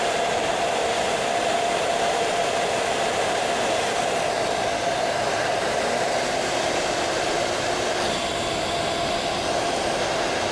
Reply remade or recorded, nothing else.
remade